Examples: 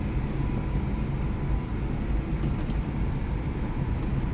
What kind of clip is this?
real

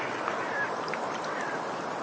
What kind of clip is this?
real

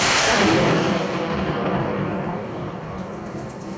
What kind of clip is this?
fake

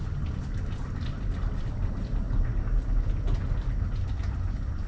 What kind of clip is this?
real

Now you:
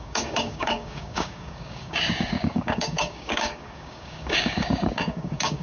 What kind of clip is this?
fake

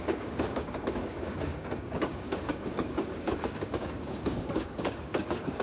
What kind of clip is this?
fake